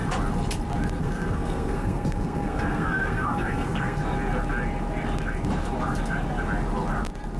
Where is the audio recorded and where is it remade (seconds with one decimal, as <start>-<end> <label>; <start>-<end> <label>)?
0.0-1.0 recorded; 1.0-4.0 remade; 4.0-7.4 recorded